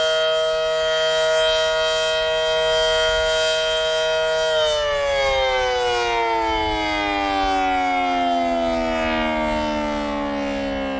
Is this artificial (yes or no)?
no